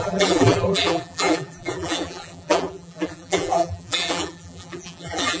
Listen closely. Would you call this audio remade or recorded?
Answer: remade